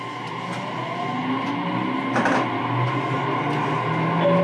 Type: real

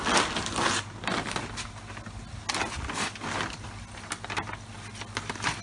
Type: real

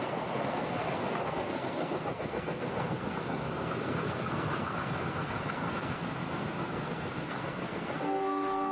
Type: fake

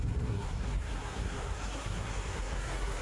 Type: fake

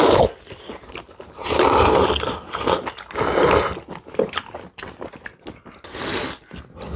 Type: real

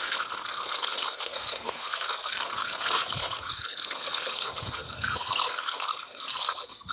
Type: fake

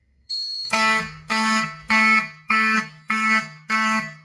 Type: fake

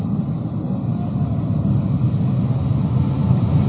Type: real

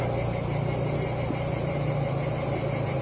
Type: real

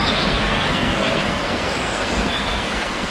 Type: fake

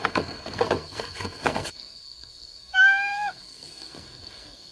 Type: fake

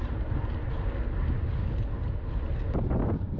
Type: real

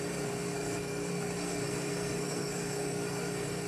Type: fake